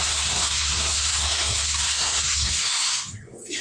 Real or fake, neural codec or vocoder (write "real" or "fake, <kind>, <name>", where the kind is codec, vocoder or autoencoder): fake, codec, SNAC